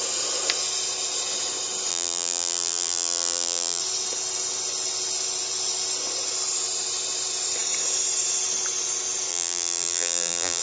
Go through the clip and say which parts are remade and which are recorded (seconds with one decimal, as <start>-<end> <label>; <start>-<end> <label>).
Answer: 0.0-1.9 recorded; 1.9-3.8 remade; 3.8-9.3 recorded; 9.3-10.6 remade